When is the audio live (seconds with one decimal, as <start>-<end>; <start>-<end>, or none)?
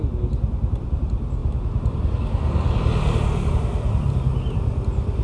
0.0-5.2